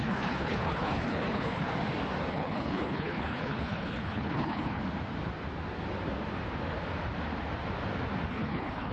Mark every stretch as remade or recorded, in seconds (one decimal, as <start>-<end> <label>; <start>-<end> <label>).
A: 0.0-1.7 remade; 1.7-2.3 recorded; 2.3-4.8 remade; 4.8-8.3 recorded; 8.3-8.9 remade